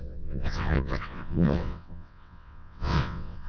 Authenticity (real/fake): fake